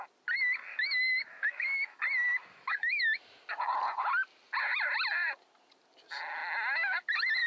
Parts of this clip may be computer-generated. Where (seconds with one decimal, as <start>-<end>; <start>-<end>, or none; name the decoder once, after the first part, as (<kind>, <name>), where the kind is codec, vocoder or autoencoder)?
0.7-2.0 (autoencoder, DAC-VAE); 2.5-3.4